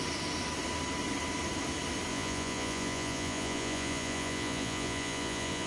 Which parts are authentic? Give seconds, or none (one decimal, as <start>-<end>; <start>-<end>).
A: 0.0-2.1